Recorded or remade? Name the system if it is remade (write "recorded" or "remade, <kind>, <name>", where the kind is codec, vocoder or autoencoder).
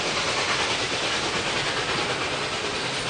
recorded